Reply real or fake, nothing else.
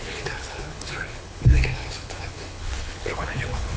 fake